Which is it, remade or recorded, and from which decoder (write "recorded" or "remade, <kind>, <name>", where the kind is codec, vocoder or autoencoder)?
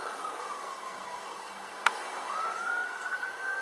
remade, codec, SNAC